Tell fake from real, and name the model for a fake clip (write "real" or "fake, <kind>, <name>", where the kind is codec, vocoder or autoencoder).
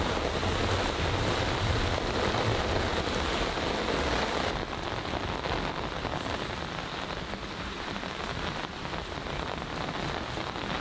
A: real